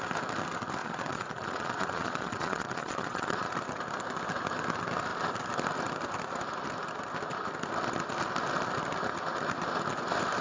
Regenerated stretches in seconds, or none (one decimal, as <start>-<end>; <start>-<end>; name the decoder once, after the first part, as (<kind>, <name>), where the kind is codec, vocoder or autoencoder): 0.8-3.5 (vocoder, Vocos)